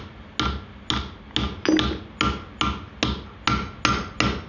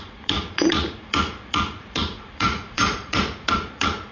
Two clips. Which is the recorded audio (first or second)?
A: first